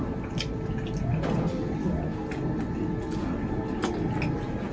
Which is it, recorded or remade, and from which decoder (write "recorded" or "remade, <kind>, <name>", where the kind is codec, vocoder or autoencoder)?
recorded